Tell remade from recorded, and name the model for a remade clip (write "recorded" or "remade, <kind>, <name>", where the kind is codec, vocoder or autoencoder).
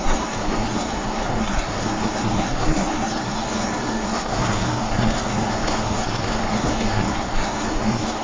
remade, codec, SNAC